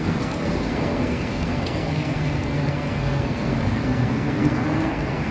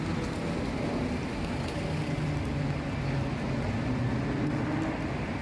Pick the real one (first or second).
second